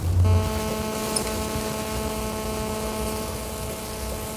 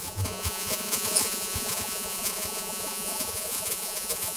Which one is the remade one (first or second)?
second